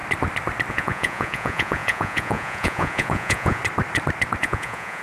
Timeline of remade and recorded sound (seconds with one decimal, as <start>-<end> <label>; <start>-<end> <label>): 0.0-0.7 recorded; 0.7-3.6 remade; 3.6-4.4 recorded; 4.4-5.0 remade